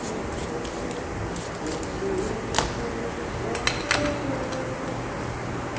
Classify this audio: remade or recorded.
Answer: recorded